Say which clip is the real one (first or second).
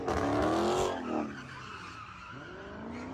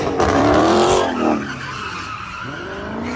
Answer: first